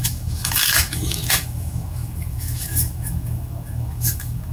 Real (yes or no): no